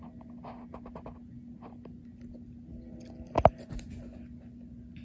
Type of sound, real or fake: real